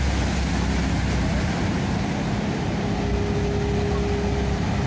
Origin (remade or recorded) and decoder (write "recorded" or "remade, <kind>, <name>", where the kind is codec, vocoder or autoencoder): recorded